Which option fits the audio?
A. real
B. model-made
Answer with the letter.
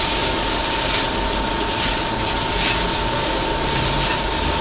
A